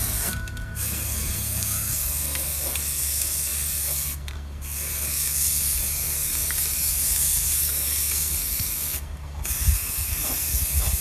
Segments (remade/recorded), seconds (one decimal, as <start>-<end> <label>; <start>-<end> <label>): 0.0-11.0 remade